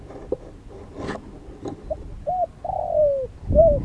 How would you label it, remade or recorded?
recorded